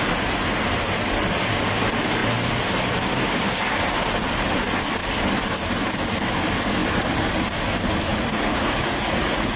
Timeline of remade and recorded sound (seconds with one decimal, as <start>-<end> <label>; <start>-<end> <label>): 0.0-8.1 recorded; 8.1-9.6 remade